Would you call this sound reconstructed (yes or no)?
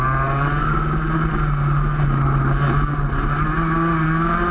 no